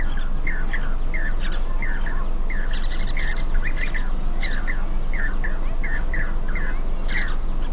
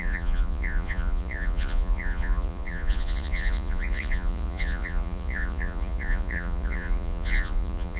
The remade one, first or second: second